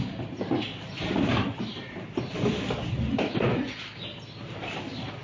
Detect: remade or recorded recorded